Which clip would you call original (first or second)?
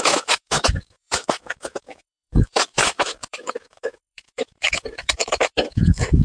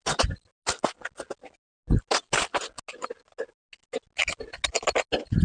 second